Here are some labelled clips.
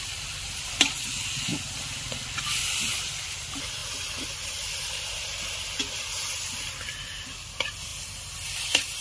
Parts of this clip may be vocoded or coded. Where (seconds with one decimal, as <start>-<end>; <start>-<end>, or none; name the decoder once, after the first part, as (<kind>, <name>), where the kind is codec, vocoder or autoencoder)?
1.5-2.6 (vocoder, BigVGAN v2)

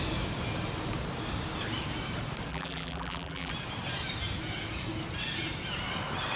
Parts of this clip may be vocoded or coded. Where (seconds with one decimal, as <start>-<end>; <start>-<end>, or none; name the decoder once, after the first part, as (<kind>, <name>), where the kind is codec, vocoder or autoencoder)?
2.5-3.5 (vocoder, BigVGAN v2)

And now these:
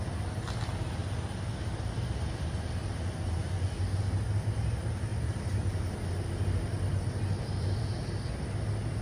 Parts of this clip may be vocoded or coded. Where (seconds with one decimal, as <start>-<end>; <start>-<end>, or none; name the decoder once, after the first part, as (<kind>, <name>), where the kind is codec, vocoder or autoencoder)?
1.0-4.1 (vocoder, BigVGAN v2); 5.1-7.8

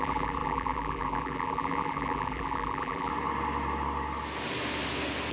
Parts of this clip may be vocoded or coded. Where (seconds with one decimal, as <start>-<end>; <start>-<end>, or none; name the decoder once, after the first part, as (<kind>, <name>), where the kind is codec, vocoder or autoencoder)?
0.0-3.1 (vocoder, BigVGAN v2)

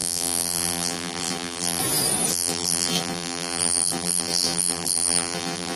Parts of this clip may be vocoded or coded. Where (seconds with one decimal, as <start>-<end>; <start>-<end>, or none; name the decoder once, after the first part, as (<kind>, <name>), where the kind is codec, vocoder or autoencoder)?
0.0-1.8 (vocoder, BigVGAN v2); 2.3-5.8

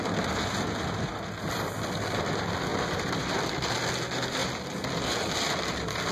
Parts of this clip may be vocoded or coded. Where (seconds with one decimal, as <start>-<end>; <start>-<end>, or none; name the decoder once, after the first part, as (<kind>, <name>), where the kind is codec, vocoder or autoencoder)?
1.1-2.3 (vocoder, BigVGAN v2); 2.7-3.6; 4.4-5.0

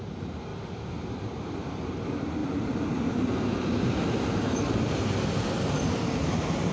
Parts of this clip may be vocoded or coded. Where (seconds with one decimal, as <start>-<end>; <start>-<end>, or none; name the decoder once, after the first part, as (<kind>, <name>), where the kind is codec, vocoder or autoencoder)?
0.0-6.7 (vocoder, BigVGAN v2)

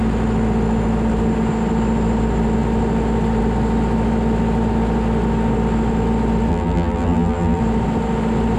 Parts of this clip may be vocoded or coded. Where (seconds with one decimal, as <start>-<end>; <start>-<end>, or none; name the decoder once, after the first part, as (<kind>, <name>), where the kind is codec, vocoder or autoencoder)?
6.5-7.6 (vocoder, BigVGAN v2)